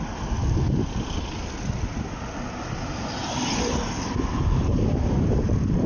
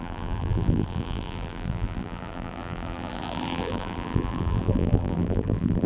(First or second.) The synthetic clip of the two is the second